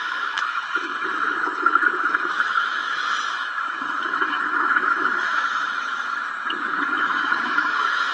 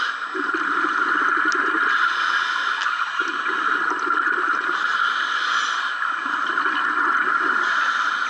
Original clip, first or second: second